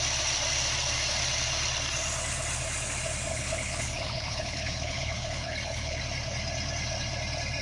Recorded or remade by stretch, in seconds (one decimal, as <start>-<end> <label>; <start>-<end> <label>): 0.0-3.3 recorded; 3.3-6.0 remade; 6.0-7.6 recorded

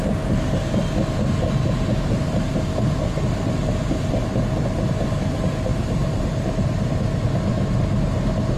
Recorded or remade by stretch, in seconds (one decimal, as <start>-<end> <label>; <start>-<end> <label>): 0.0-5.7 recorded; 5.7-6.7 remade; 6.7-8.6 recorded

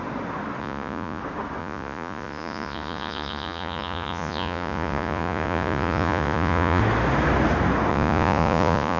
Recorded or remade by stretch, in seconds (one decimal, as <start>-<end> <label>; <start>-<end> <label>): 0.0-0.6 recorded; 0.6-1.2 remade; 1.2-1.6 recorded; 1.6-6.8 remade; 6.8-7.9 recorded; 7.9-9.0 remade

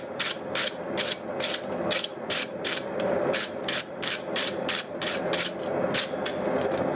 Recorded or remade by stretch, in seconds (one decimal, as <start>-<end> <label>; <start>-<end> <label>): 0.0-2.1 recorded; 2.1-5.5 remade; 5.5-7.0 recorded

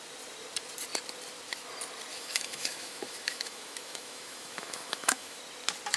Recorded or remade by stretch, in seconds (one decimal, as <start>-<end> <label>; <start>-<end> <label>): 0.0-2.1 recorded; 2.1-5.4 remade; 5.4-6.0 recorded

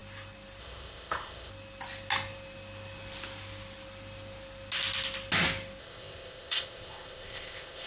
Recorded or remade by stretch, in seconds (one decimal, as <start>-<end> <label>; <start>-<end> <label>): 0.0-0.6 recorded; 0.6-1.5 remade; 1.5-5.8 recorded; 5.8-7.9 remade